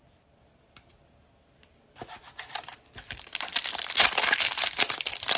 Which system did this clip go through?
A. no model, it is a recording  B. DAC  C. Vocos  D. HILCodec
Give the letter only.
A